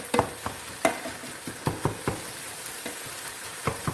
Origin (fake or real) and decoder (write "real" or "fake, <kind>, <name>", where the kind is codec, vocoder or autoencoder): real